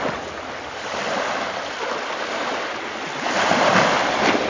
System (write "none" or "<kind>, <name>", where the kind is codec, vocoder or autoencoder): none